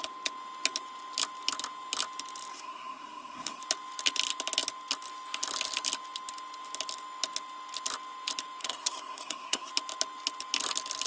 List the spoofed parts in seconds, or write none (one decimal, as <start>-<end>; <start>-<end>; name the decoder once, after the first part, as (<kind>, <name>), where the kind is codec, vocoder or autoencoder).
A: 2.5-3.6 (codec, SNAC); 8.6-9.7